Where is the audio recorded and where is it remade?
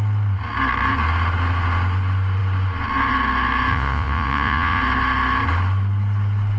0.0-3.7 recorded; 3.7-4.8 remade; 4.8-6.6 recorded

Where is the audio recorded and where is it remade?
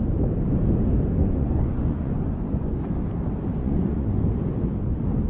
0.0-1.2 recorded; 1.2-2.7 remade; 2.7-3.6 recorded; 3.6-4.2 remade; 4.2-5.3 recorded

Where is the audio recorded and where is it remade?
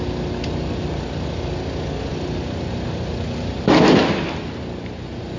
0.0-5.4 recorded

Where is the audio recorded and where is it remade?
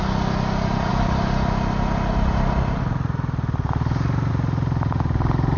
0.0-5.6 recorded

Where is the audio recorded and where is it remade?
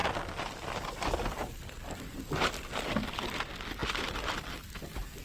0.0-5.2 recorded